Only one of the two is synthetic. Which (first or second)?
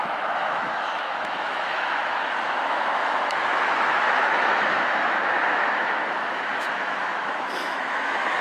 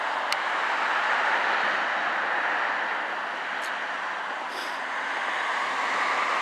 first